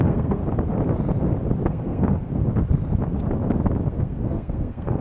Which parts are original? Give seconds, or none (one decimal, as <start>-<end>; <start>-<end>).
0.4-1.7; 2.3-3.9